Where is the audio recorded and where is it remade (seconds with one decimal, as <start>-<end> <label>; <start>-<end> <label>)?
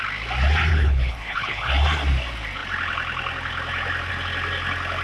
0.0-0.7 recorded; 0.7-1.7 remade; 1.7-5.0 recorded